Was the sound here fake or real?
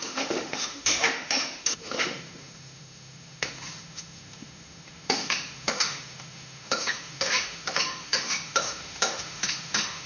fake